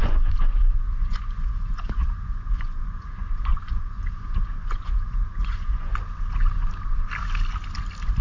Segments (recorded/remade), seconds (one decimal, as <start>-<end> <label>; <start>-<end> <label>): 0.0-5.9 remade; 5.9-8.2 recorded